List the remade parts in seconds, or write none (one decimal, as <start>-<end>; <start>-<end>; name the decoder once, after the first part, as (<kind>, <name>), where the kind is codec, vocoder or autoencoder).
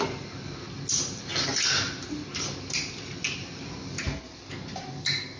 none